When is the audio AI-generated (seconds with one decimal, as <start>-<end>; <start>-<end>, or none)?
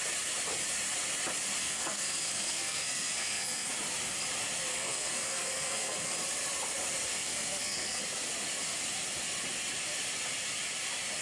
1.6-3.7; 4.7-6.1; 7.1-8.0